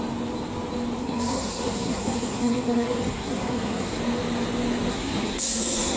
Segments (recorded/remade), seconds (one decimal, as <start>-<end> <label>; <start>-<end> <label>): 0.0-1.0 recorded; 1.0-4.0 remade; 4.0-4.9 recorded; 4.9-6.0 remade